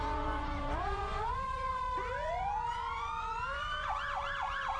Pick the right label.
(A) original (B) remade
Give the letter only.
B